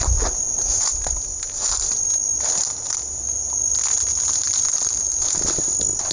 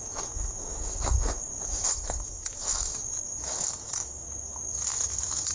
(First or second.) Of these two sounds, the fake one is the second